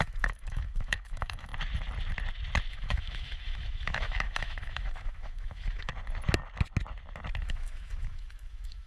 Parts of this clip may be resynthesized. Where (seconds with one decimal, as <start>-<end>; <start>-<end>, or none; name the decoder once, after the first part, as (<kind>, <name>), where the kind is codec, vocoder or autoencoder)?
0.0-1.5 (autoencoder, DAC-VAE); 2.7-5.9; 7.4-8.9